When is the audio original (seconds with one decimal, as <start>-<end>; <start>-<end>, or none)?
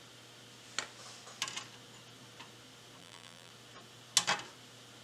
0.0-3.0; 3.5-5.0